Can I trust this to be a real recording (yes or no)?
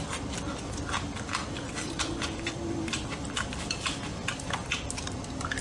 no